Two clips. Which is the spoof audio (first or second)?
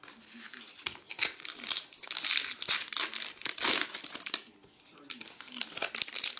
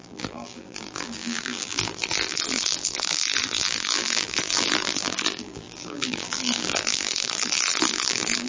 second